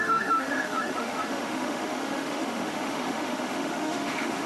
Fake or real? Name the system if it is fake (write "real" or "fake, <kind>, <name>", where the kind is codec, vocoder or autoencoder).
fake, autoencoder, DAC-VAE